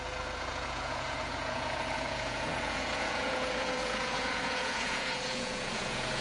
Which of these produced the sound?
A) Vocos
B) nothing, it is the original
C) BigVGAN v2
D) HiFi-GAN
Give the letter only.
A